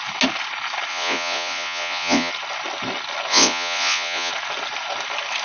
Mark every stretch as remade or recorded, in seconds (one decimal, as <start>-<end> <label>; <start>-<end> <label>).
0.0-0.9 recorded; 0.9-2.3 remade; 2.3-3.3 recorded; 3.3-4.3 remade; 4.3-5.4 recorded